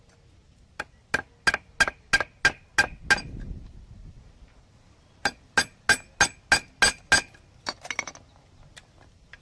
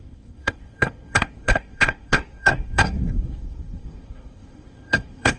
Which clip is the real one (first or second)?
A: first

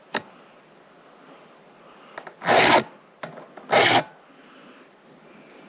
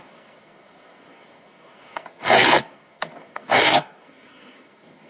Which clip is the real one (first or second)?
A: first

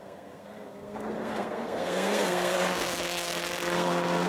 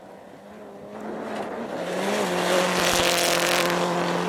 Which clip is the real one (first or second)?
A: second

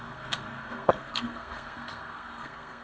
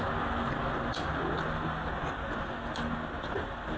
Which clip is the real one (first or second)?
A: second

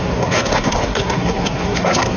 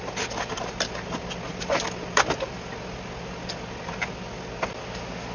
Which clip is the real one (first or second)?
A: second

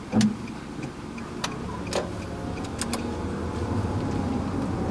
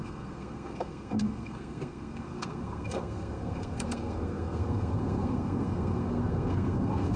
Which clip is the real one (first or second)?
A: first